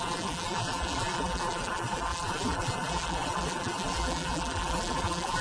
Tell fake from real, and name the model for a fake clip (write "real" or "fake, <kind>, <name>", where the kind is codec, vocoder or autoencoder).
fake, vocoder, BigVGAN v2